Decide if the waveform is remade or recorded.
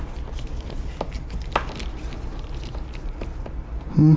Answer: recorded